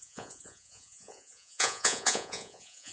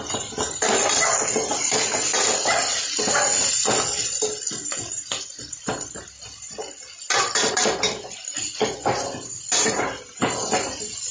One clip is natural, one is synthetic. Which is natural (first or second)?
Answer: second